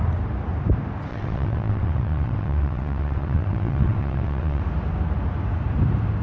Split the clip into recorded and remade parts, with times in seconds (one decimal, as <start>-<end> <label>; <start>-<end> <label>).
0.0-1.1 recorded; 1.1-4.6 remade; 4.6-6.2 recorded